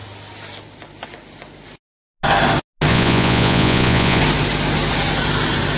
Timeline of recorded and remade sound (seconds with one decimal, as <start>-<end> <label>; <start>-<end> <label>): 0.0-2.9 recorded; 2.9-4.2 remade; 4.2-5.8 recorded